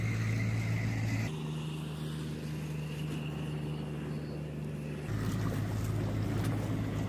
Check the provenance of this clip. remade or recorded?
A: recorded